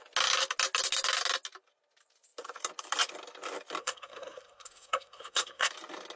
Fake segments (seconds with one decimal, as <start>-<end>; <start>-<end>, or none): 3.8-5.7